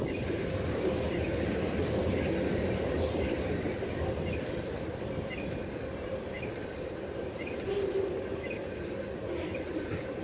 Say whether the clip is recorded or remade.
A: recorded